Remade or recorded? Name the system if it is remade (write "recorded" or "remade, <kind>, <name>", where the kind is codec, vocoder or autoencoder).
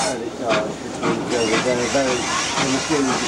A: recorded